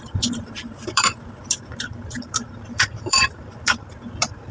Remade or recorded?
remade